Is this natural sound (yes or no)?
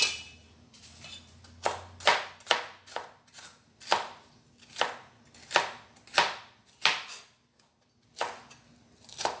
yes